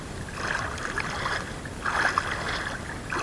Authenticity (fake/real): real